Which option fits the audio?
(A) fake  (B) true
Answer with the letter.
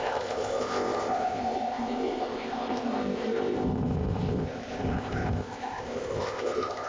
A